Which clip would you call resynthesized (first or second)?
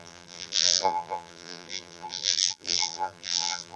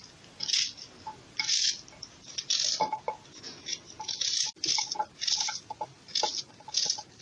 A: first